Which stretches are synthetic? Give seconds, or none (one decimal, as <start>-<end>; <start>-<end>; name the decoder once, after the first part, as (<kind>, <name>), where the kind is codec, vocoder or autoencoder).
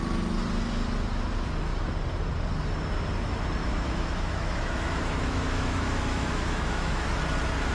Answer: 3.6-7.2 (autoencoder, DAC-VAE)